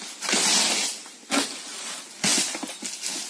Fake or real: real